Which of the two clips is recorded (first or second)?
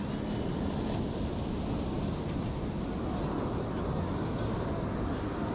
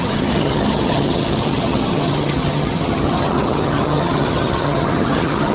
first